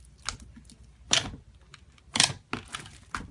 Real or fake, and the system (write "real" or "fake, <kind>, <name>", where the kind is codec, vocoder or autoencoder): real